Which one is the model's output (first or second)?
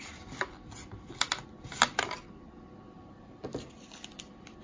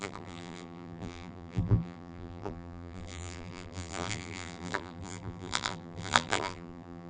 second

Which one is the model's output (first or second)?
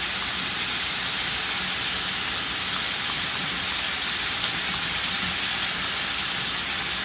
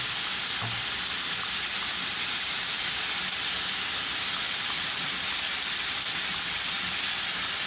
second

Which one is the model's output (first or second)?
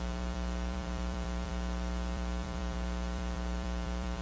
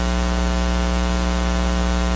first